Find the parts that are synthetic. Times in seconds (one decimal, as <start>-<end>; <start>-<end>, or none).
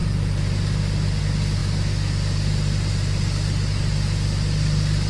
none